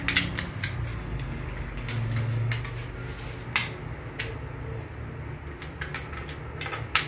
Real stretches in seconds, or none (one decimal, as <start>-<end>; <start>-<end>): 0.0-0.9; 2.5-7.1